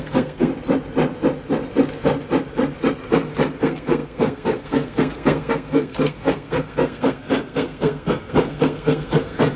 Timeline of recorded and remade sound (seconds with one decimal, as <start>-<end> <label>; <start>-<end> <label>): 0.0-0.5 remade; 0.5-3.6 recorded; 3.6-9.6 remade